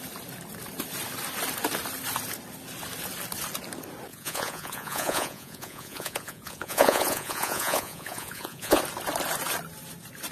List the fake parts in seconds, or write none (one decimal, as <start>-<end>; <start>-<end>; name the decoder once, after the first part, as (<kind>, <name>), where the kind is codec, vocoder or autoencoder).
4.1-8.8 (vocoder, Vocos)